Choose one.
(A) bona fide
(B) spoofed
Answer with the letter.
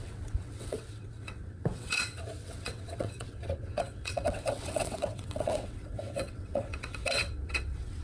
B